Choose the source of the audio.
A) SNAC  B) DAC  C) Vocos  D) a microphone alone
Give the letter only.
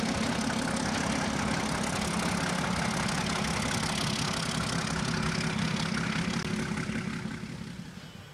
D